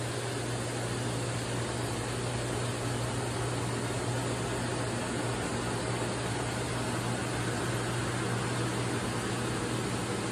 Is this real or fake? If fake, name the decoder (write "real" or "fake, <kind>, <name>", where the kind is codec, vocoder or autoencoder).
real